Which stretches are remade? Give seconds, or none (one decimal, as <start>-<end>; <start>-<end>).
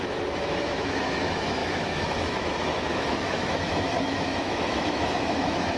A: 0.0-5.8